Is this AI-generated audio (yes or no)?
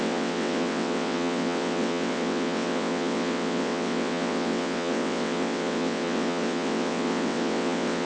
yes